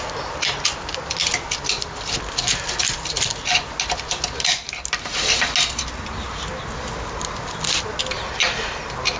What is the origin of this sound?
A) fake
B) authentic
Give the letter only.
B